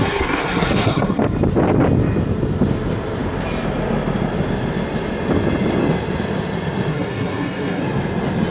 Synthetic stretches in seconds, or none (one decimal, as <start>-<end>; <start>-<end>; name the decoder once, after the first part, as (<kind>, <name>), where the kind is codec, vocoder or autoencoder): 0.0-1.2 (codec, SNAC); 6.9-7.8